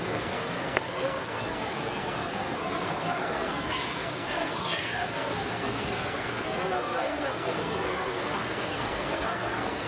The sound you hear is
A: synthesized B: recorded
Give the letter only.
A